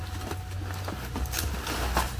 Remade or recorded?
recorded